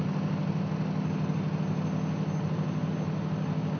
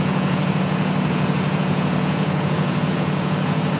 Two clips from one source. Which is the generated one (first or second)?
second